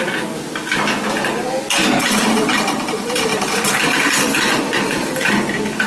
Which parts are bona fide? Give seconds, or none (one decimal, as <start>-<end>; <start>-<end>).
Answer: 0.0-2.0; 5.5-5.9